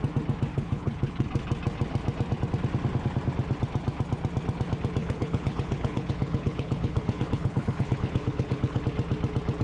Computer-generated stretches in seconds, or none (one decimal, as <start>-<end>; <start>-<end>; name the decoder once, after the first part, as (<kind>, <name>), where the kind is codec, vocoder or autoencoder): 0.5-1.3 (codec, HILCodec); 5.0-8.8

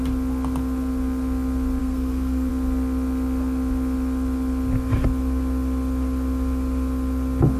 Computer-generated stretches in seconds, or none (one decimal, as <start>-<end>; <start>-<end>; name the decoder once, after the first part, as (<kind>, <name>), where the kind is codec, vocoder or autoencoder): 1.8-2.5 (codec, SNAC)

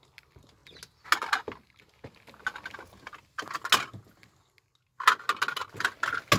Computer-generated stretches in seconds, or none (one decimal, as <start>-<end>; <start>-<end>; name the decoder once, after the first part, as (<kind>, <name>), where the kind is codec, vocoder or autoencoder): none

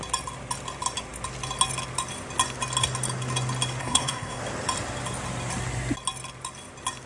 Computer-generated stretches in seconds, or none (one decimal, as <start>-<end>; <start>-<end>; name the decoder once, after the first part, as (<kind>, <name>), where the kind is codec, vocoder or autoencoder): 3.8-4.4 (codec, SNAC)